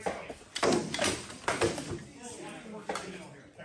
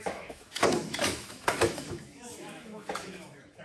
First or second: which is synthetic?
second